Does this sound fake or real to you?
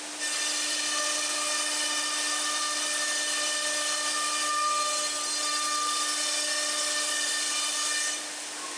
real